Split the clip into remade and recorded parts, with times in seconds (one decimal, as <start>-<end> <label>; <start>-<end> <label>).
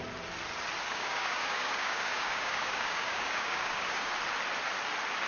0.0-0.9 recorded; 0.9-4.1 remade; 4.1-5.3 recorded